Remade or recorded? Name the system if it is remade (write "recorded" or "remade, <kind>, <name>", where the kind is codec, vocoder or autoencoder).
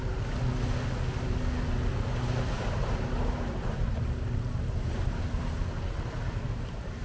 recorded